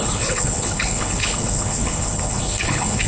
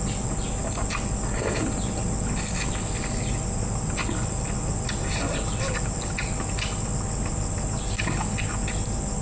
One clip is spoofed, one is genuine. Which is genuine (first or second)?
second